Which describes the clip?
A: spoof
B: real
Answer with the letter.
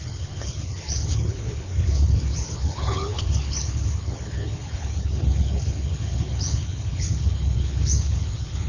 A